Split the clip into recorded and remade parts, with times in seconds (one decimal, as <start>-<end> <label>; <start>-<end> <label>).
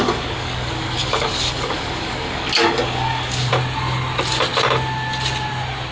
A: 0.0-3.5 remade; 3.5-5.9 recorded